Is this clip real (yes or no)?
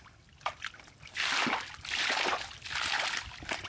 yes